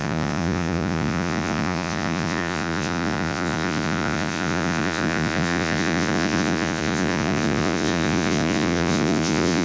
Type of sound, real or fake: fake